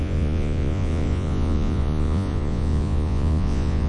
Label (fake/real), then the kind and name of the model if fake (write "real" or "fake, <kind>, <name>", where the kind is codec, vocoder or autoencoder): fake, vocoder, Vocos